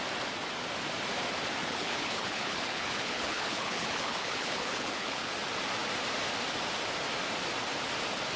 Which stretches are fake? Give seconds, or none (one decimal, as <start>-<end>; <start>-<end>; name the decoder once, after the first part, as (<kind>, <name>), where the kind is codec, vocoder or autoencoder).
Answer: 1.6-5.3 (codec, HILCodec)